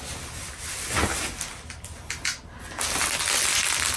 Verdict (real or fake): real